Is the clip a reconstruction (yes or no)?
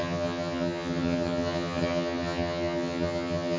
yes